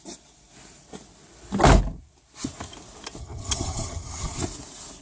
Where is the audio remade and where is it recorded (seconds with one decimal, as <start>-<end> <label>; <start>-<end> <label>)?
0.0-3.2 recorded; 3.2-4.4 remade; 4.4-5.0 recorded